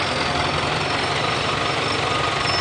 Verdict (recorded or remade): recorded